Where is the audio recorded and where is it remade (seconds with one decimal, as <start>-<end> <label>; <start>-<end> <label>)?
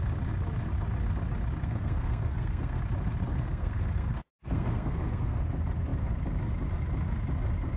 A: 0.0-1.6 recorded; 1.6-2.8 remade; 2.8-3.3 recorded; 3.3-5.4 remade; 5.4-7.8 recorded